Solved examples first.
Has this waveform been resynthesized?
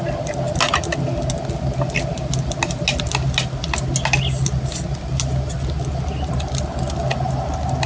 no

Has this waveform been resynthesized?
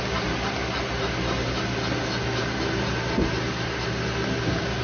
no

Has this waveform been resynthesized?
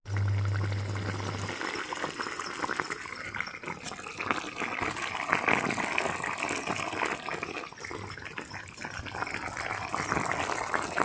no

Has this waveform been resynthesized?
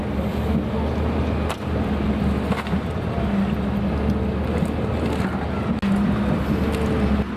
no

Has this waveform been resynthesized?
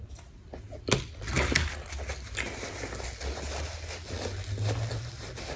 no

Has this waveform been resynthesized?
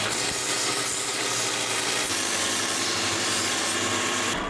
no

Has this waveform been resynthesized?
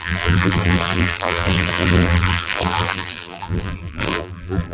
yes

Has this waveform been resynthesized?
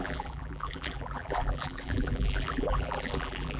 yes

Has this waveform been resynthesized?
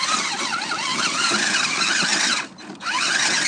yes